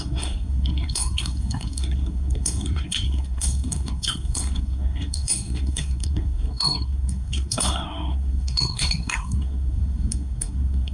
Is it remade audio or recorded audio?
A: remade